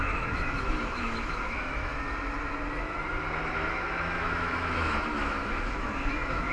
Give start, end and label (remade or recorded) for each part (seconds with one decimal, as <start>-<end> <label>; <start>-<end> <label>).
0.0-1.9 remade; 1.9-3.7 recorded; 3.7-6.5 remade